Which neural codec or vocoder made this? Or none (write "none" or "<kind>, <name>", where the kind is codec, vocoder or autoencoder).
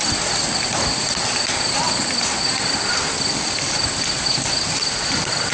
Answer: none